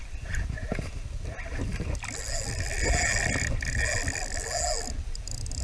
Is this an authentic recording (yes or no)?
yes